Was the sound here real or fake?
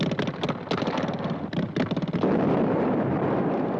real